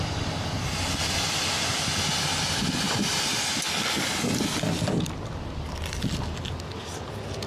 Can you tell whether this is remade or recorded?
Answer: recorded